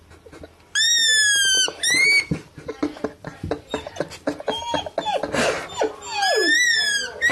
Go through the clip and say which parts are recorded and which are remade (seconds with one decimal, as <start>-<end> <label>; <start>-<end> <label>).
0.0-7.3 recorded